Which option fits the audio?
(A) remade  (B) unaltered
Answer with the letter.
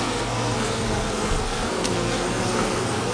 A